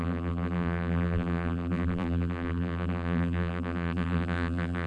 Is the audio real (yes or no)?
no